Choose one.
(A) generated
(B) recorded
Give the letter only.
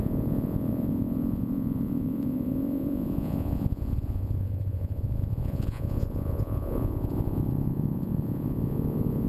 A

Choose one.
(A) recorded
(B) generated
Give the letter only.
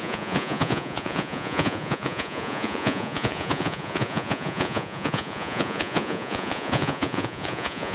B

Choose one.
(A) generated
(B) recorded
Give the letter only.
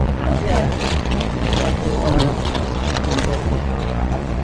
A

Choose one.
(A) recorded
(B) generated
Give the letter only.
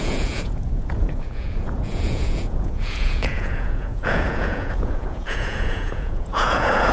B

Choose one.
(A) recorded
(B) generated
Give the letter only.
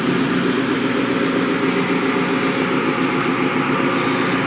A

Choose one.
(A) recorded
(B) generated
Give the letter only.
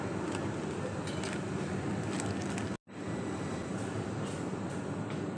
A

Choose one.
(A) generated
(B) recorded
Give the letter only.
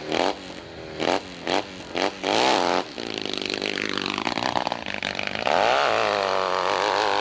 B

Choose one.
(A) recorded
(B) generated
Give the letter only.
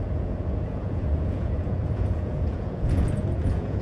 B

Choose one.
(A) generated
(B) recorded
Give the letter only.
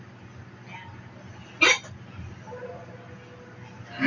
B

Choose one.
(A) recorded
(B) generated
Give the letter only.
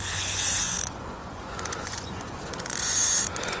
B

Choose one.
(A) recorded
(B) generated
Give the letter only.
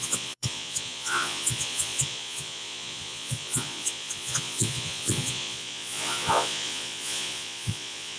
B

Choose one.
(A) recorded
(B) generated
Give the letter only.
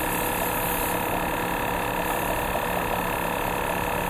A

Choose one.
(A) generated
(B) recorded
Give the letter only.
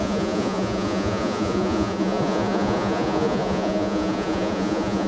A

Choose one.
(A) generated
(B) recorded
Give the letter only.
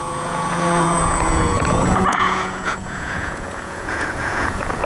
A